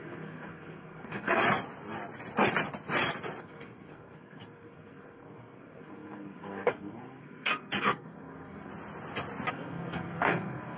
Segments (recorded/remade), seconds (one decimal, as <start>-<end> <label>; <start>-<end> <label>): 0.0-1.4 remade; 1.4-3.4 recorded; 3.4-8.7 remade; 8.7-9.5 recorded; 9.5-10.8 remade